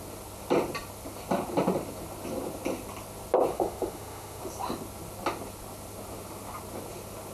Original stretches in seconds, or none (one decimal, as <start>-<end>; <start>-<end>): 0.0-3.5; 4.4-7.3